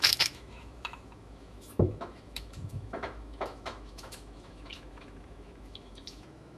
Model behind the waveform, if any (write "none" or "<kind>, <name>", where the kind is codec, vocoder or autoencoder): autoencoder, DAC-VAE